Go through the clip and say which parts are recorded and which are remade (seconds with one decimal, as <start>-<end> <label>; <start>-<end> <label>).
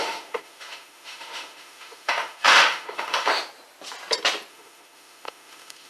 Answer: 0.0-3.3 remade; 3.3-4.5 recorded; 4.5-5.9 remade